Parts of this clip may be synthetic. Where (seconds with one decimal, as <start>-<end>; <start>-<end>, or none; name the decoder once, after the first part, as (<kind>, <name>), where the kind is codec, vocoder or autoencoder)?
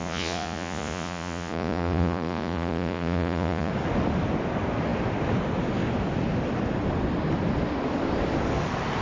0.0-3.7 (vocoder, Vocos)